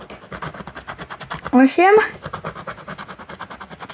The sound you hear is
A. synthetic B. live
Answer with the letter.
B